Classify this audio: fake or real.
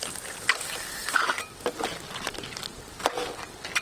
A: real